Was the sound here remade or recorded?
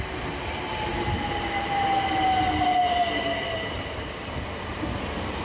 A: recorded